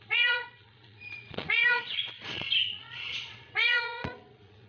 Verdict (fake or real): fake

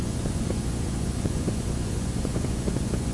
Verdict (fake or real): fake